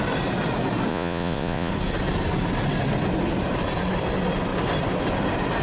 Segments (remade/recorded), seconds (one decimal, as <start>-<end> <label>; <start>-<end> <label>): 0.0-0.9 recorded; 0.9-1.7 remade; 1.7-5.6 recorded